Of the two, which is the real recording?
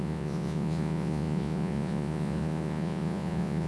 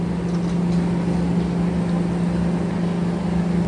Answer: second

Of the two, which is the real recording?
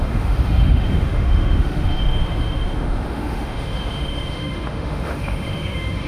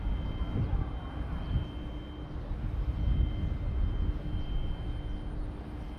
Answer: second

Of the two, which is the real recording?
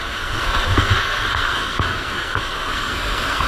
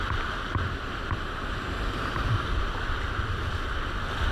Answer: second